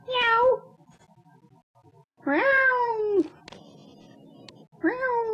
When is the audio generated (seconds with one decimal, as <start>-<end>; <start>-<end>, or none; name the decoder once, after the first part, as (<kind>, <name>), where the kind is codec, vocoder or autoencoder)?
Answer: 1.7-3.0 (vocoder, BigVGAN v2)